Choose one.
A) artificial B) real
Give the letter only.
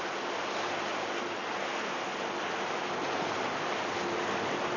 B